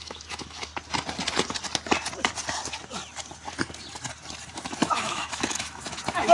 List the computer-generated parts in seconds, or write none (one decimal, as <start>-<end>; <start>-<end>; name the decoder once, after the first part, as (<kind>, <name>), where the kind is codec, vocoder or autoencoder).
0.0-0.7 (autoencoder, DAC-VAE); 4.5-6.3